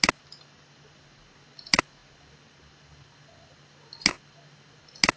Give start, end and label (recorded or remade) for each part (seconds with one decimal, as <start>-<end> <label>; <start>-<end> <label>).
0.0-5.2 recorded